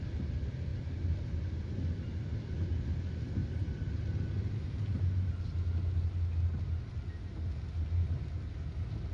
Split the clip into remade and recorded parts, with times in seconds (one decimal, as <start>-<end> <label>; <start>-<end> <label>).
0.0-3.4 recorded; 3.4-3.9 remade; 3.9-9.1 recorded